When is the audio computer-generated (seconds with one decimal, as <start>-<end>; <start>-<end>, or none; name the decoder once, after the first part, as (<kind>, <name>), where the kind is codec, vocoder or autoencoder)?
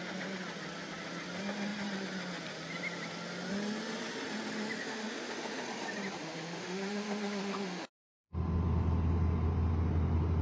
4.8-5.6 (autoencoder, DAC-VAE); 6.2-8.2